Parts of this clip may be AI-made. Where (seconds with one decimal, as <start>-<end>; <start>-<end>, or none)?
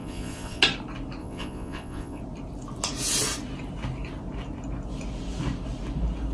0.0-0.6; 1.2-2.2